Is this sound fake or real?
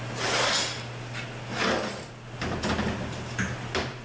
real